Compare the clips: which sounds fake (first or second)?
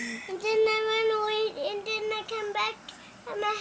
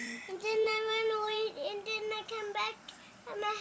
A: second